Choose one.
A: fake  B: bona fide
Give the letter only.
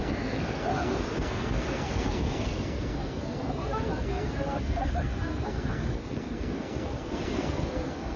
A